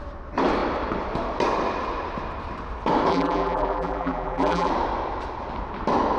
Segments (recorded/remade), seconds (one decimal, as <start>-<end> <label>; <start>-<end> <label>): 0.0-3.1 recorded; 3.1-4.7 remade; 4.7-6.2 recorded